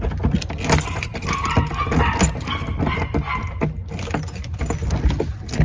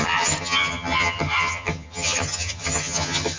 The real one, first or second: first